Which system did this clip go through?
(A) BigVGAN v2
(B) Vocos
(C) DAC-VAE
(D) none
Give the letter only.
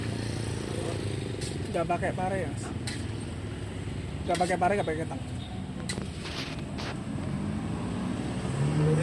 D